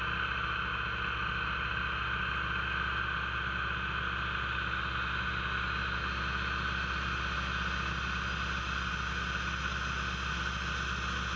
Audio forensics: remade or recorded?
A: recorded